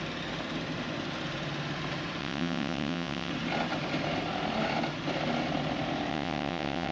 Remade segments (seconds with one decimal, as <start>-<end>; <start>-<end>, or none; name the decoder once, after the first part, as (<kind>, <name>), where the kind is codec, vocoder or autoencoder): 2.2-3.3 (vocoder, WaveNeXt); 6.1-6.9